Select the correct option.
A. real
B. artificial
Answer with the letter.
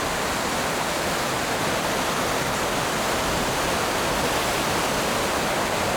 A